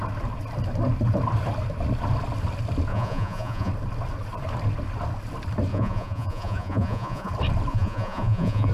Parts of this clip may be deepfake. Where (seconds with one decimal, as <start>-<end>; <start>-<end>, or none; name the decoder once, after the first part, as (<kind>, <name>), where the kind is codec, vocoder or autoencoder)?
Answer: 2.9-3.7 (vocoder, Vocos); 5.7-7.3; 7.7-8.7